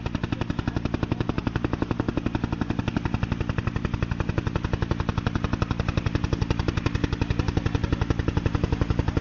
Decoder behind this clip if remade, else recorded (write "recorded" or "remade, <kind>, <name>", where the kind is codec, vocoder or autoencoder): recorded